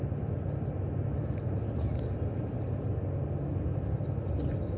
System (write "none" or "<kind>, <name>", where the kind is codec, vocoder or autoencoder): none